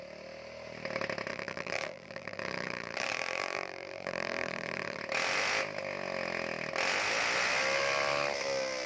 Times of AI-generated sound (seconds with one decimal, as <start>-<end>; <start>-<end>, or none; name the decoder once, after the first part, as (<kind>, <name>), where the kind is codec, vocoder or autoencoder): 1.3-5.0 (vocoder, BigVGAN v2)

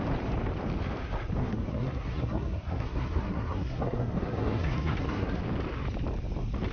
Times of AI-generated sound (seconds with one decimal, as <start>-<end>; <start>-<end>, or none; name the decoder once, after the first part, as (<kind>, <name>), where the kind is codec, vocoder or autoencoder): 1.4-5.4 (codec, SNAC)